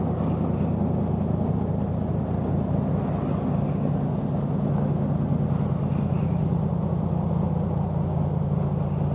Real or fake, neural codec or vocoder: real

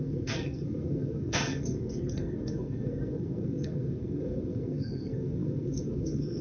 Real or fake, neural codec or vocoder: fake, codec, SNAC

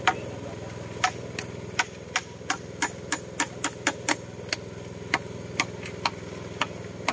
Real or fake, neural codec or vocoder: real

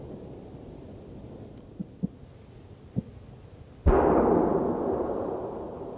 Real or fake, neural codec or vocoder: real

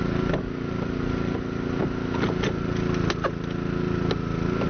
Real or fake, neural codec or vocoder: real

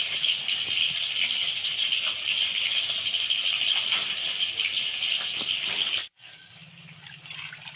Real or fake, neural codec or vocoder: real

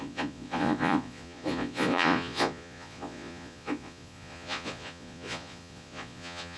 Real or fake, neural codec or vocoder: fake, vocoder, Vocos